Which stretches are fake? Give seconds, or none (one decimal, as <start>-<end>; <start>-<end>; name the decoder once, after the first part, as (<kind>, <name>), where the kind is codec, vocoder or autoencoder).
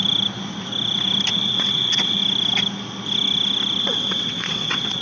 1.3-2.2 (vocoder, WaveNeXt); 3.8-5.0